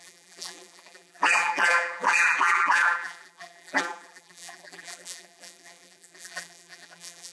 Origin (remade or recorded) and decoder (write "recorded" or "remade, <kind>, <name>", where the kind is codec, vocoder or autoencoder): remade, vocoder, BigVGAN v2